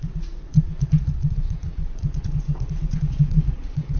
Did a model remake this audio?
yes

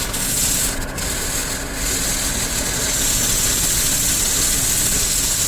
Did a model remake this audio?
no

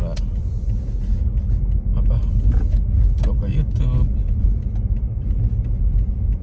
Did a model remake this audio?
no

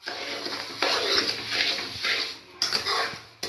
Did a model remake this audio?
no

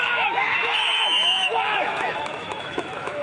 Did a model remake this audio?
yes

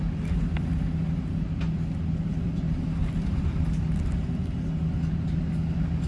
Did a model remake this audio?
no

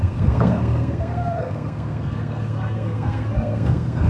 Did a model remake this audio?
yes